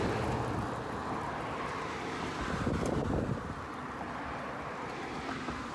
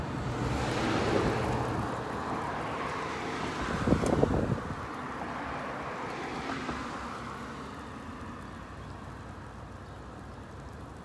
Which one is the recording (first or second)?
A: second